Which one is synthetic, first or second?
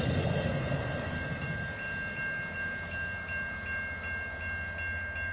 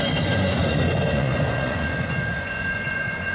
second